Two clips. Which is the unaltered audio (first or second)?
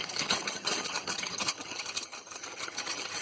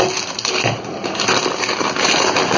second